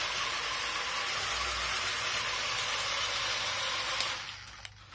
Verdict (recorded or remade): recorded